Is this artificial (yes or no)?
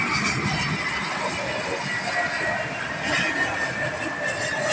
no